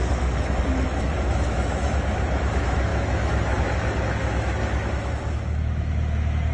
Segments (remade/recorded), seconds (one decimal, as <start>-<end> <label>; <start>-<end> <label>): 0.0-6.5 remade